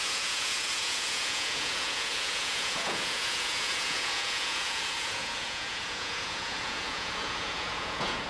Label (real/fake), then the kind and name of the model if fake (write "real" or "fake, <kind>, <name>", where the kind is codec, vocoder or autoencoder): fake, vocoder, Vocos